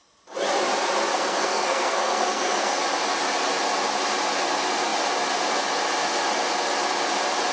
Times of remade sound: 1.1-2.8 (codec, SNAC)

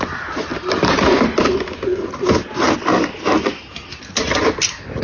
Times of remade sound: none

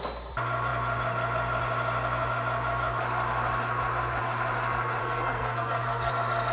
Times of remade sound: 5.0-6.1 (codec, SNAC)

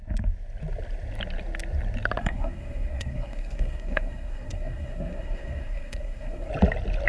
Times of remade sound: 2.2-6.5 (codec, SNAC)

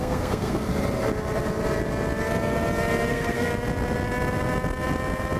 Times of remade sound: 0.0-0.7 (codec, SNAC); 3.1-3.5